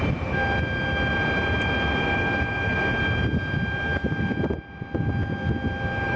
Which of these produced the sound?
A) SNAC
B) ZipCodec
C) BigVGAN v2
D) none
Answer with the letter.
D